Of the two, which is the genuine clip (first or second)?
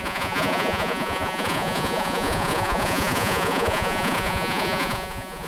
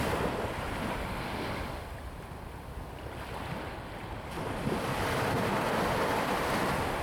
second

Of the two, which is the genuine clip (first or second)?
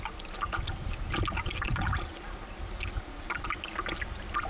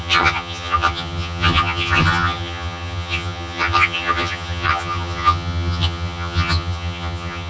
first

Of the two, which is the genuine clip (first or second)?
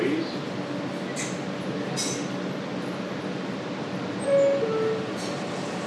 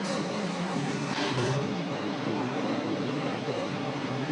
first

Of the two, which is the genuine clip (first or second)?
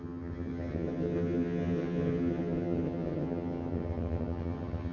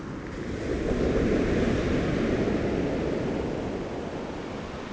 second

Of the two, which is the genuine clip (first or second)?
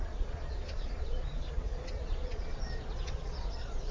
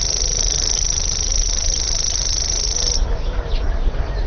second